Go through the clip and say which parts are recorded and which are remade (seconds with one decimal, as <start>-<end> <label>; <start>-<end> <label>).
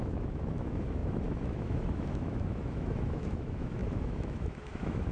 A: 0.0-5.1 remade